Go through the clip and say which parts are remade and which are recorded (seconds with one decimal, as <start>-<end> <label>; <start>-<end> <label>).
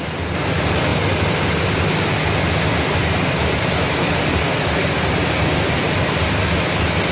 0.0-7.1 recorded